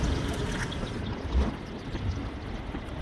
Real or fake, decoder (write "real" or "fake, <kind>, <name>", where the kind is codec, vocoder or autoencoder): real